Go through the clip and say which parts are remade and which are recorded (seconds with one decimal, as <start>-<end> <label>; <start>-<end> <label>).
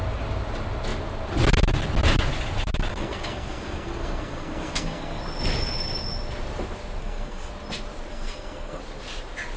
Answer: 0.0-2.9 recorded; 2.9-5.2 remade; 5.2-7.0 recorded; 7.0-7.5 remade; 7.5-8.1 recorded; 8.1-8.8 remade; 8.8-9.6 recorded